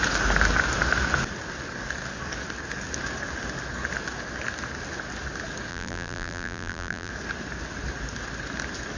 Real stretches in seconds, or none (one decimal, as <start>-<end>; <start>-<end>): 0.0-5.7; 7.1-9.0